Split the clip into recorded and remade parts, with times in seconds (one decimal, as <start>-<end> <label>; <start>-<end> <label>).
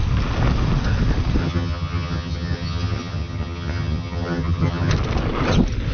0.0-1.4 recorded; 1.4-4.9 remade; 4.9-5.9 recorded